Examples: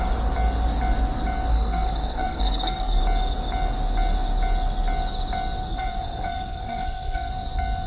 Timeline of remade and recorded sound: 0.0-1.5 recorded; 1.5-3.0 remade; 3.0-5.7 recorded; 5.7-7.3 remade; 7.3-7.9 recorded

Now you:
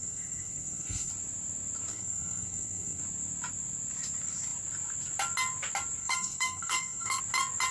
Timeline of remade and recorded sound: 0.0-1.1 remade; 1.1-1.9 recorded; 1.9-3.0 remade; 3.0-6.0 recorded; 6.0-7.2 remade; 7.2-7.7 recorded